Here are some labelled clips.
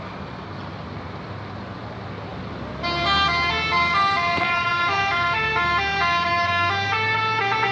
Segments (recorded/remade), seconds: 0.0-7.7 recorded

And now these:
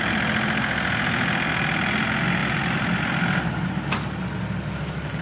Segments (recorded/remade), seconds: 0.0-5.2 recorded

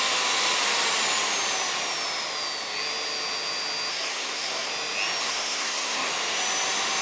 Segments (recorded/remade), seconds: 0.0-3.9 recorded; 3.9-4.7 remade; 4.7-5.2 recorded; 5.2-6.1 remade; 6.1-7.0 recorded